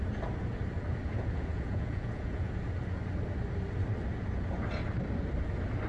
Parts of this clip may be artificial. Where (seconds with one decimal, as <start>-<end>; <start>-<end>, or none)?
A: 1.0-2.5